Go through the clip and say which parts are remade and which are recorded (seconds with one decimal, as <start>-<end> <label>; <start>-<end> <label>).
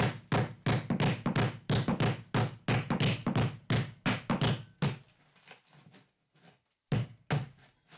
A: 0.0-8.0 recorded